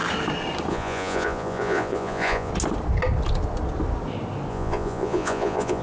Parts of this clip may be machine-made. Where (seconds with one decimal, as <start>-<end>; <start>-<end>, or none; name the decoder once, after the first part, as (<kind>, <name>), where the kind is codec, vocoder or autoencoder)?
0.7-2.5 (vocoder, Vocos); 4.5-5.8